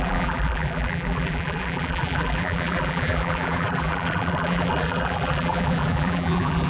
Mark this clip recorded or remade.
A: remade